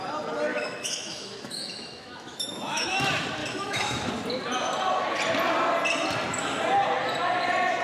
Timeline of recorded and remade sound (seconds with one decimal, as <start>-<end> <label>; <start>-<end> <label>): 0.0-0.5 recorded; 0.5-3.0 remade; 3.0-3.4 recorded; 3.4-4.1 remade; 4.1-7.8 recorded